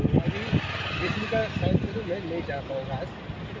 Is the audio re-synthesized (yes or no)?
no